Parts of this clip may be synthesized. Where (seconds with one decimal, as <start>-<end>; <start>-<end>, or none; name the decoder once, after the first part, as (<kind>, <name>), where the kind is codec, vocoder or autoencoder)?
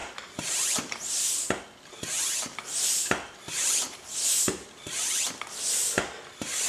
0.0-1.6 (vocoder, BigVGAN v2)